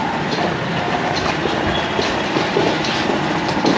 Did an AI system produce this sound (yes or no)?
no